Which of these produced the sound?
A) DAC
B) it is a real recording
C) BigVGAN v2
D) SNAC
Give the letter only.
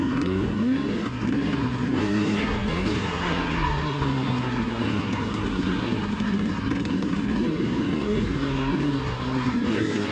D